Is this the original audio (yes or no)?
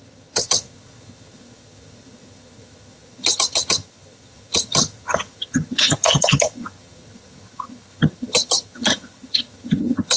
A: no